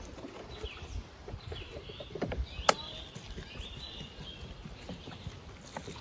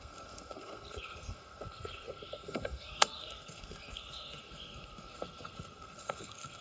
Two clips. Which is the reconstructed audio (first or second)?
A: second